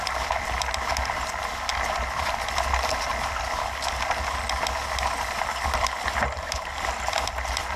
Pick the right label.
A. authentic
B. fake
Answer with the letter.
A